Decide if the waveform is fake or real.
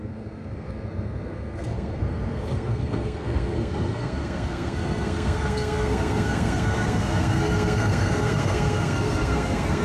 fake